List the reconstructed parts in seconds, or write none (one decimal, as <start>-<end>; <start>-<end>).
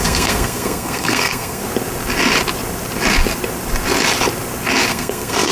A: 0.0-1.6; 4.9-5.5